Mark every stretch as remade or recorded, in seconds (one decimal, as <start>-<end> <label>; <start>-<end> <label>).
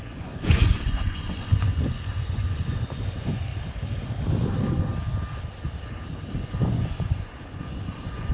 0.0-3.5 remade; 3.5-6.4 recorded; 6.4-8.3 remade